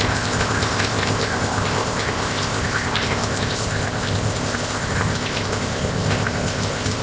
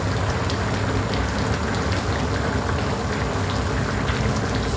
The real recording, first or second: second